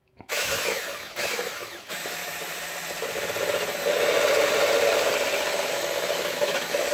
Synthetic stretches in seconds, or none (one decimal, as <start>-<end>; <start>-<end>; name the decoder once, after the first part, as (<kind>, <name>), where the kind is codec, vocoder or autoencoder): 0.0-2.2 (autoencoder, DAC-VAE); 5.6-6.9